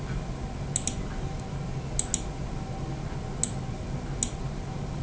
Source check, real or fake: real